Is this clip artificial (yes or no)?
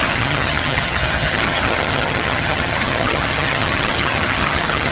yes